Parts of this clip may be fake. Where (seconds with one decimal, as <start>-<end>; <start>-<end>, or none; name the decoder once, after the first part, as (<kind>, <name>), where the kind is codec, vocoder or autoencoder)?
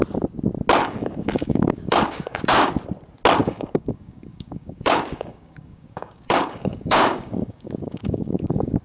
0.8-2.7 (codec, DAC); 3.4-8.8